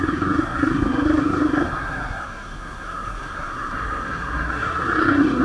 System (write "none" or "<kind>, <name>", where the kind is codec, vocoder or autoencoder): codec, SNAC